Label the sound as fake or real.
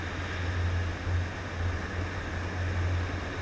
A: real